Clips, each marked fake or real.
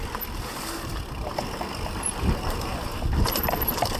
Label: fake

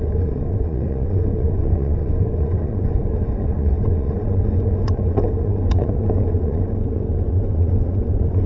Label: fake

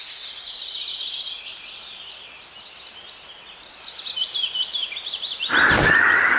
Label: real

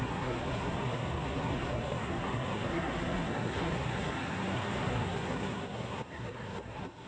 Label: fake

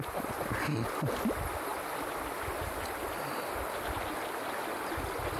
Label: real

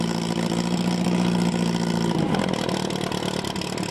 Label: real